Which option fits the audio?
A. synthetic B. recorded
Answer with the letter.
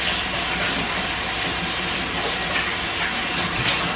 B